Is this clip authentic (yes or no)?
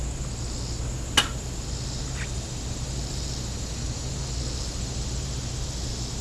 yes